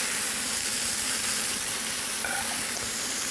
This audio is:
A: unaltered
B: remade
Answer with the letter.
A